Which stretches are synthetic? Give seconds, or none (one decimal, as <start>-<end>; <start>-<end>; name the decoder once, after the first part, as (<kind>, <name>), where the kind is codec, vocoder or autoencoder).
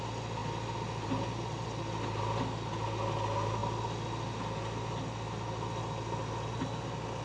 none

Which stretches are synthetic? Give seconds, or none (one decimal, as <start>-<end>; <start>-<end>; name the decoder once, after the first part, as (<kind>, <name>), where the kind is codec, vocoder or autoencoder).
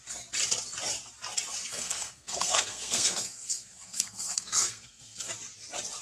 1.7-5.3 (codec, SNAC)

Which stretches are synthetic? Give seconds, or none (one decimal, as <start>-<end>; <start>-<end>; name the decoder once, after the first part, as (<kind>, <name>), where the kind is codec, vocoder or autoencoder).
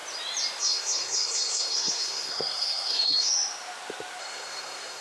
0.6-3.3 (codec, SNAC); 4.2-5.0